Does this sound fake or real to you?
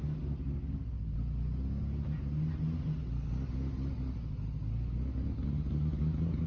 real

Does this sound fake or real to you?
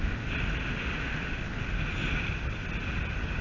real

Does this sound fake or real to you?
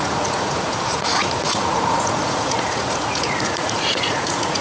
fake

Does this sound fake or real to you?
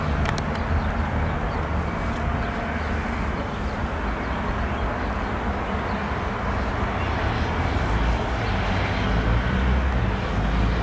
real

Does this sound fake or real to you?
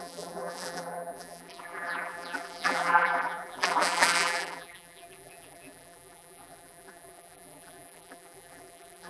fake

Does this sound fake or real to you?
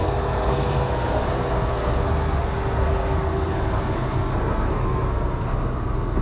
fake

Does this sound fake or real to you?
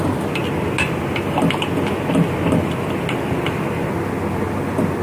real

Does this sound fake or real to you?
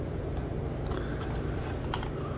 real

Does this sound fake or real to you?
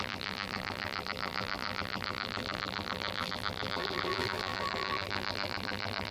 fake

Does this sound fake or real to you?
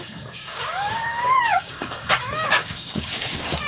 fake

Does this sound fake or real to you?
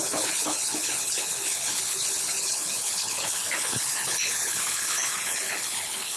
fake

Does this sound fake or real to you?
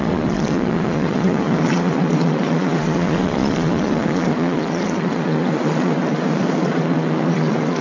fake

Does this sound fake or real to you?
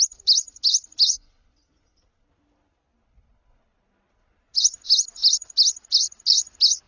real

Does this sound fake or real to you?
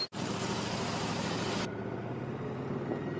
real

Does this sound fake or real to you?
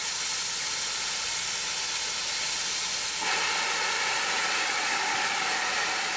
real